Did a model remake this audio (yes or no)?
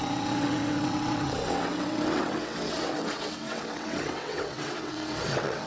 yes